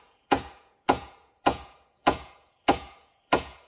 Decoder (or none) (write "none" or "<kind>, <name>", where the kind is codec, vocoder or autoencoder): vocoder, Vocos